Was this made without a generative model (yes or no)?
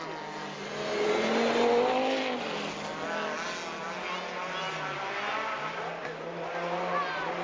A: yes